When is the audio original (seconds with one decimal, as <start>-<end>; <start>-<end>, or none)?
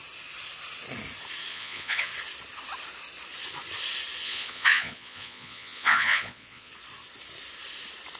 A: 0.0-1.5; 2.1-4.2; 6.7-8.2